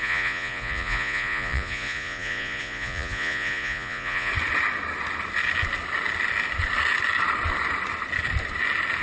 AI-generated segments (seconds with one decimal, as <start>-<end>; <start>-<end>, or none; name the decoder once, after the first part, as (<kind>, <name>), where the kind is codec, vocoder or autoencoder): 0.0-4.3 (vocoder, Vocos)